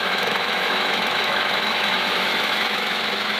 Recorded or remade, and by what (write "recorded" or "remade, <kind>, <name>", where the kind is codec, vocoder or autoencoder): remade, autoencoder, DAC-VAE